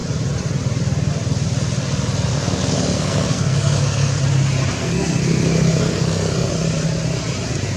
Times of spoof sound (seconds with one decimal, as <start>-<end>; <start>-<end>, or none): 2.3-4.2; 4.8-6.5